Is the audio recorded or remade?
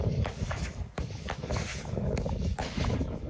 remade